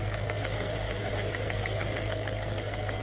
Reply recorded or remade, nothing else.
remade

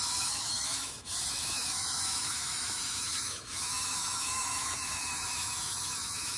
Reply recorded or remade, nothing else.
remade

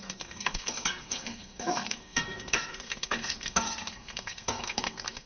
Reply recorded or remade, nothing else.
remade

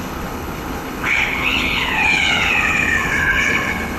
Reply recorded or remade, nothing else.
remade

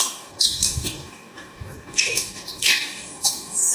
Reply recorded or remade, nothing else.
remade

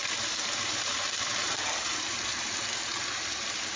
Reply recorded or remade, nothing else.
recorded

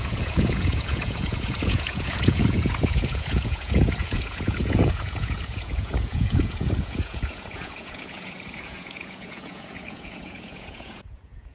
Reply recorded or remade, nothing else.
remade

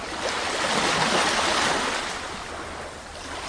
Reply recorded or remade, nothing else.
recorded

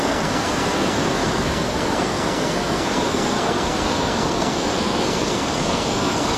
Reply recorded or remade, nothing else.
remade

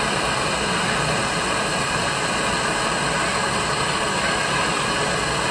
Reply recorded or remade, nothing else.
recorded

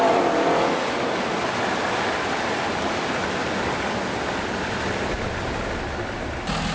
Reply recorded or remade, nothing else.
recorded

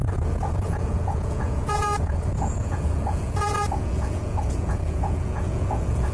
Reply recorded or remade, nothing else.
remade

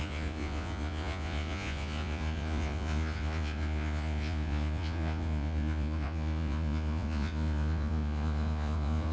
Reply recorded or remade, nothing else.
remade